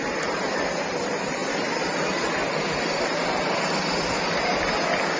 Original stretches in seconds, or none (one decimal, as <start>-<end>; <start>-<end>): 0.0-5.2